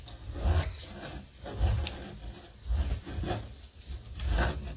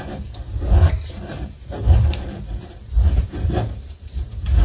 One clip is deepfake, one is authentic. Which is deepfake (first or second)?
second